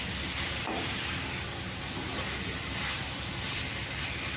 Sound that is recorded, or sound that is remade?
recorded